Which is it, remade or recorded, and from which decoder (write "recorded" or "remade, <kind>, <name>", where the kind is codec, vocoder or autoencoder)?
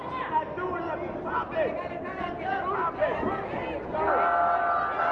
recorded